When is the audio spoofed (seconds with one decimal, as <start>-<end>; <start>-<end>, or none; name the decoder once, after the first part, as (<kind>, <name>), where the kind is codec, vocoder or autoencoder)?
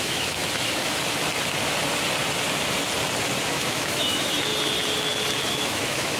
0.0-0.4 (autoencoder, DAC-VAE); 3.4-4.5; 5.5-6.2